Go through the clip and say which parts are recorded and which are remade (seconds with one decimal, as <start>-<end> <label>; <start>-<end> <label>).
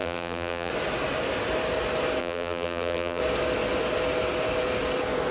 0.0-0.7 remade; 0.7-2.2 recorded; 2.2-3.2 remade; 3.2-5.3 recorded